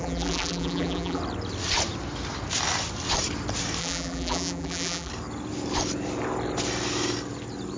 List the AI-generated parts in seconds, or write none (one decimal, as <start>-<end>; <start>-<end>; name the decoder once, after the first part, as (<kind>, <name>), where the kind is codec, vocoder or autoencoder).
0.0-1.2 (vocoder, BigVGAN v2); 3.8-5.1